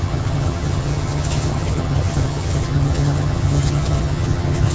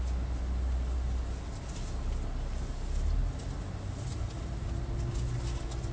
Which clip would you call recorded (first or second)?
second